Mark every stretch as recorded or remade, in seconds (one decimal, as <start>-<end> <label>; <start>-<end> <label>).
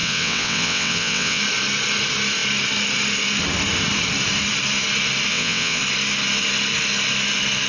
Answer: 0.0-1.4 remade; 1.4-5.3 recorded; 5.3-5.8 remade; 5.8-7.7 recorded